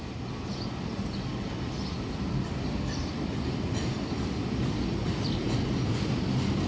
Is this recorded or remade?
recorded